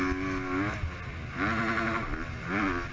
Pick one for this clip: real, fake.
real